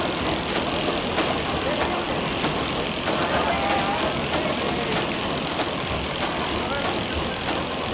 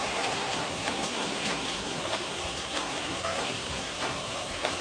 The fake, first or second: second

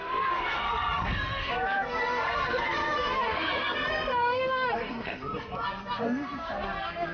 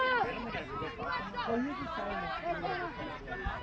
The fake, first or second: first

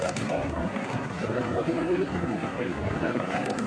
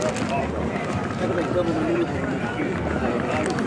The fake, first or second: first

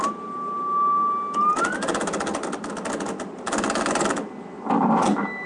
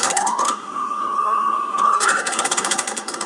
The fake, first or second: second